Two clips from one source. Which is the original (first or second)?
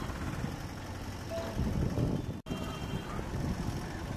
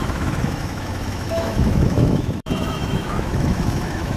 first